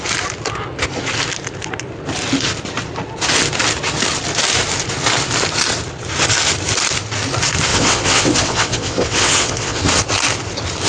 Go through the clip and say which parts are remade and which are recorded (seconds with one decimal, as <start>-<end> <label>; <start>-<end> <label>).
0.0-7.7 recorded; 7.7-9.8 remade; 9.8-10.9 recorded